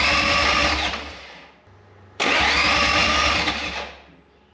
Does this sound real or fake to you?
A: real